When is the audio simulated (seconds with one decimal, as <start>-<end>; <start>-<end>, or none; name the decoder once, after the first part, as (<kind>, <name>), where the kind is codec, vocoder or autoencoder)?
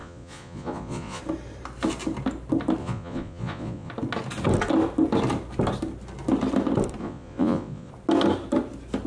0.0-1.2 (vocoder, Vocos); 2.8-3.9; 7.0-7.9